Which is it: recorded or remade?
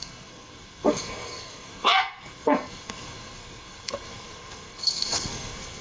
remade